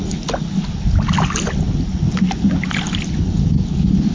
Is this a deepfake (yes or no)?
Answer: no